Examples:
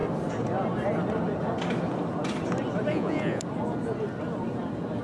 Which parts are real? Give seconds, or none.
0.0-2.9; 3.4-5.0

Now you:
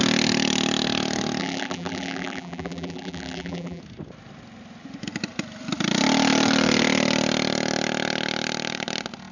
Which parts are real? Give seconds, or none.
0.0-1.4; 3.8-9.3